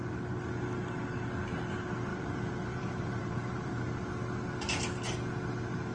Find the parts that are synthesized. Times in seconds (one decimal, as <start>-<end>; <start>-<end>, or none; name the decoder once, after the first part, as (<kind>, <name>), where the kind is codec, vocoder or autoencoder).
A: 2.1-3.7 (vocoder, BigVGAN v2)